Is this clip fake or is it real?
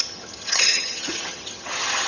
fake